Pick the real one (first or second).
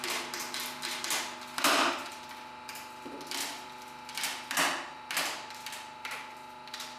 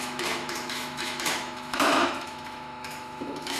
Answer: first